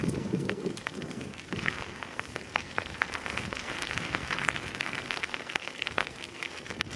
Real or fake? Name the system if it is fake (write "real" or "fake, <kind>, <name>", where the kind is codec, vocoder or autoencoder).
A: fake, codec, SNAC